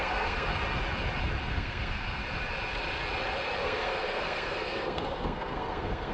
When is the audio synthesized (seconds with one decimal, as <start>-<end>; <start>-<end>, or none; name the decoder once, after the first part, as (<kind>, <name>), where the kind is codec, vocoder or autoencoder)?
0.0-0.5 (codec, SNAC); 1.5-2.2; 3.6-6.1

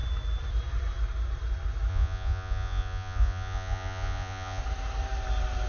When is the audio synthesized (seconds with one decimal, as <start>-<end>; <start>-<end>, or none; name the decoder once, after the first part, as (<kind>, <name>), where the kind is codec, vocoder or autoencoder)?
1.9-4.6 (vocoder, Vocos)

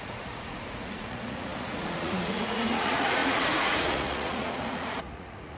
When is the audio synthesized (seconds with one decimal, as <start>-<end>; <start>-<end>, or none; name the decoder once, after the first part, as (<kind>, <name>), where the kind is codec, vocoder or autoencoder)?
0.0-5.6 (vocoder, Vocos)

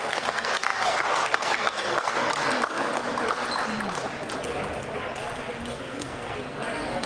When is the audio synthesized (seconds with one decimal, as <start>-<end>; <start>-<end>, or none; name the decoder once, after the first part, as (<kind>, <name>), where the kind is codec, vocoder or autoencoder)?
0.0-3.0 (codec, SNAC); 5.7-7.1

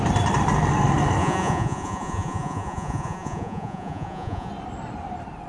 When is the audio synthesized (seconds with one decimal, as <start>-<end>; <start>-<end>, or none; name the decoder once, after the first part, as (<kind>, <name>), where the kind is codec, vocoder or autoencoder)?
1.2-4.5 (vocoder, Vocos)

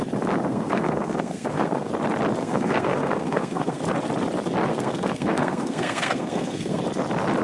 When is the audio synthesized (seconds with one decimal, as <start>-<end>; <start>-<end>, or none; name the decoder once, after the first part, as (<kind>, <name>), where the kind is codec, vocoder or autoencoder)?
0.5-1.9 (codec, SNAC); 2.4-3.8; 4.7-6.8